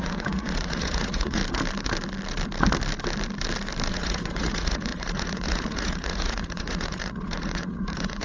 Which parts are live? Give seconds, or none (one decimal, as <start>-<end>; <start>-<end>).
1.4-3.9